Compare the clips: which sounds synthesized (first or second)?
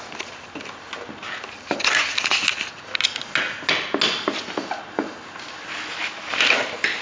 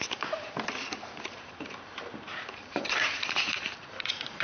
second